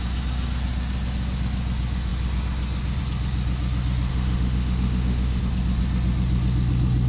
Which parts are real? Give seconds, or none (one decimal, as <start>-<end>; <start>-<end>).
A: 0.0-4.1; 5.4-7.1